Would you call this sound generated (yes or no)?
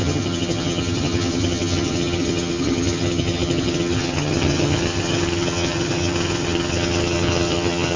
yes